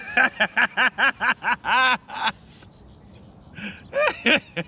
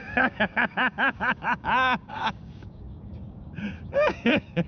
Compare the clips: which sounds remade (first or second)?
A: second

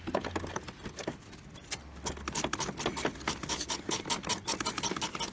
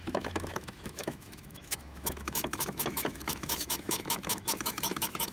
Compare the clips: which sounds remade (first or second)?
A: second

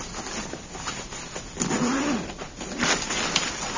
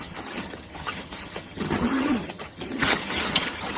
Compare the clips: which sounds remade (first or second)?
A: second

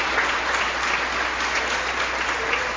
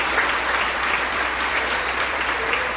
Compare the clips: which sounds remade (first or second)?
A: second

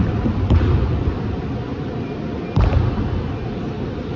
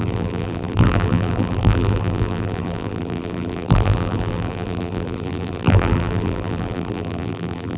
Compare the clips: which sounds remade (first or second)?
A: second